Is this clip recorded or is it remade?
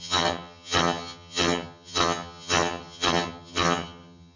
remade